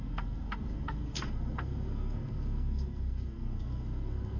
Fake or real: fake